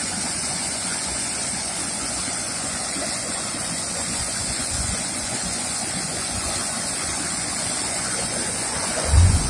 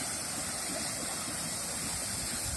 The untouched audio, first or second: second